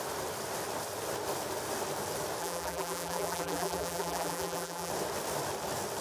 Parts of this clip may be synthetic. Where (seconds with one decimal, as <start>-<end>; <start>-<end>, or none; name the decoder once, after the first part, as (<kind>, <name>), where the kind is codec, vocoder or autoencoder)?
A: 2.4-4.9 (vocoder, BigVGAN v2)